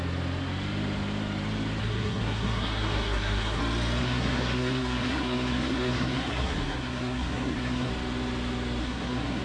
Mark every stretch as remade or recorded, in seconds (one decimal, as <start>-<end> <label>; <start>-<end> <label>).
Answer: 0.0-1.8 recorded; 1.8-3.6 remade; 3.6-4.0 recorded; 4.0-7.9 remade; 7.9-8.8 recorded; 8.8-9.4 remade